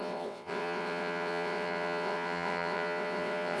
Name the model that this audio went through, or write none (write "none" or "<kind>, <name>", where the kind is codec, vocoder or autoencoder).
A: vocoder, WaveNeXt